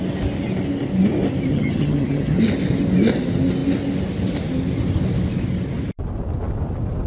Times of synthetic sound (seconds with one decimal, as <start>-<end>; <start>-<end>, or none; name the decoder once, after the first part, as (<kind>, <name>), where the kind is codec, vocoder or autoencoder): 1.5-2.4 (vocoder, HiFi-GAN)